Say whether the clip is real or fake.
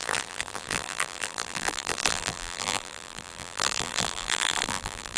fake